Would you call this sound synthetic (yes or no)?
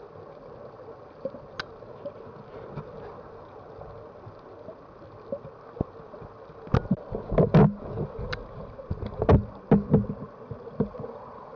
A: no